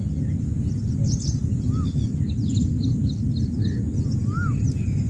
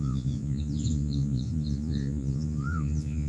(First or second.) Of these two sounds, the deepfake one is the second